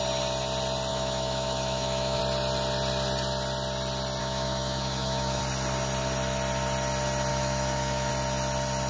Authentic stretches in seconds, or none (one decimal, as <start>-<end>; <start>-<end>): 0.0-0.9; 2.2-4.2; 5.4-7.3; 8.1-8.9